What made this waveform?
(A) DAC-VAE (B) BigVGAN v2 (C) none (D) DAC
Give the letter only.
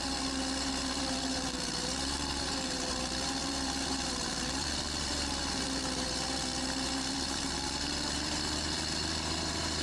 B